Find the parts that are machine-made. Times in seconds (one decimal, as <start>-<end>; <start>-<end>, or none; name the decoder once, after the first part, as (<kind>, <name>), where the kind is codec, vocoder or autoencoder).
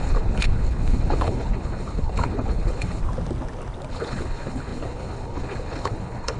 0.0-3.0 (codec, HILCodec); 3.9-6.4